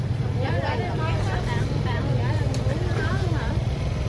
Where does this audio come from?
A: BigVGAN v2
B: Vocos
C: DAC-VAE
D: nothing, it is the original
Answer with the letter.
D